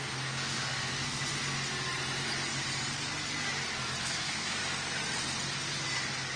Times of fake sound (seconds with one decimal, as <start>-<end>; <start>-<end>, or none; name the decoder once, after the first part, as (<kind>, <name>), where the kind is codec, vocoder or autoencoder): 0.0-1.3 (codec, SNAC); 4.0-4.6